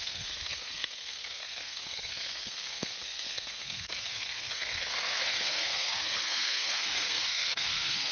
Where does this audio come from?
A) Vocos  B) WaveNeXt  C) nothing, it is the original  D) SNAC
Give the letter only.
D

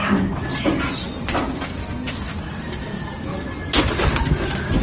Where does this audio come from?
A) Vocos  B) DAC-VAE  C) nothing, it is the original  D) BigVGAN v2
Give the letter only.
C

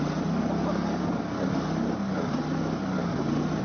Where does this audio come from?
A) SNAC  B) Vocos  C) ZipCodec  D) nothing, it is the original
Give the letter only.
D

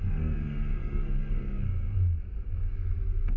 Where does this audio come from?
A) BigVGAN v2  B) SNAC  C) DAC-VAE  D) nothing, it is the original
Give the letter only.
B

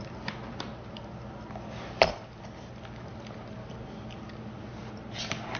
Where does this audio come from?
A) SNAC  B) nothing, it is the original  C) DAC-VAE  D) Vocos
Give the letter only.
B